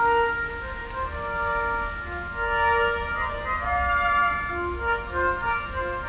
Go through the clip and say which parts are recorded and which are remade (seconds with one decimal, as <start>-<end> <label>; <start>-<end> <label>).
0.0-6.1 recorded